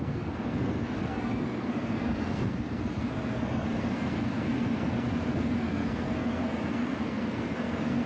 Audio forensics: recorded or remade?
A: remade